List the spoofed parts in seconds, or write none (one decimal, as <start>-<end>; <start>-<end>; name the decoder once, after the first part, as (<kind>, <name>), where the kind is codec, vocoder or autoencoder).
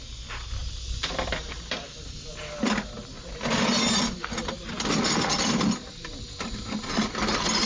none